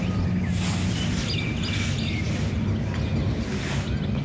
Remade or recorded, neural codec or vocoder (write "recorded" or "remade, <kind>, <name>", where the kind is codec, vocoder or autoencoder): recorded